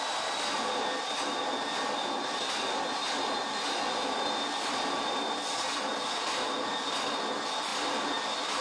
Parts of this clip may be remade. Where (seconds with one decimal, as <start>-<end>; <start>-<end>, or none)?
none